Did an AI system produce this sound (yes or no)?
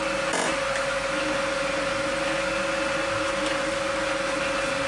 no